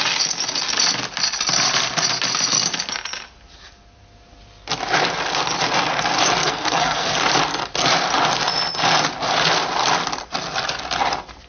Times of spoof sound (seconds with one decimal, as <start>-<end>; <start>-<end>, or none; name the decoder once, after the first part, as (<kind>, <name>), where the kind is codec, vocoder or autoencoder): 6.4-7.1 (codec, SNAC)